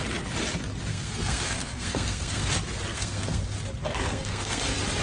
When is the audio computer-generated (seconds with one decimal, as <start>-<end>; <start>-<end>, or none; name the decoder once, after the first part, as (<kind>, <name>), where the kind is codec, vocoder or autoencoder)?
0.9-2.5 (codec, SNAC); 2.9-3.4; 3.8-4.6